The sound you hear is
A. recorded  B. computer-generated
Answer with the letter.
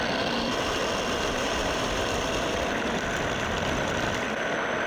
A